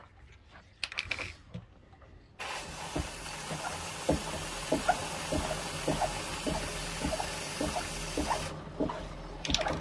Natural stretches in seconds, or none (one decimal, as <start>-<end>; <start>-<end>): 0.0-9.8